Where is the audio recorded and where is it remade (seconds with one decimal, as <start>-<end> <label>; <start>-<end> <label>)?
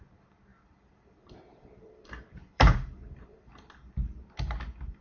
0.0-0.5 recorded; 0.5-3.5 remade; 3.5-5.0 recorded